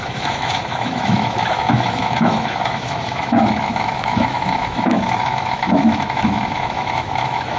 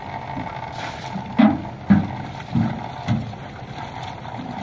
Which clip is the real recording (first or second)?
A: second